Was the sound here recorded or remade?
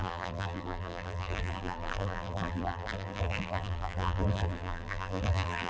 remade